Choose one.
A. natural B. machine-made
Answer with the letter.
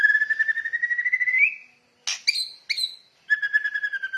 A